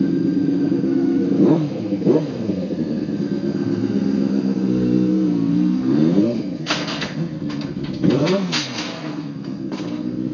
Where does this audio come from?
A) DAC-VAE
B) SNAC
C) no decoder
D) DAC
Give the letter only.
B